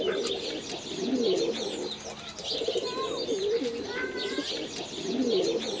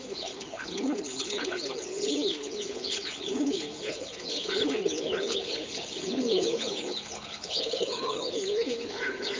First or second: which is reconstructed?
second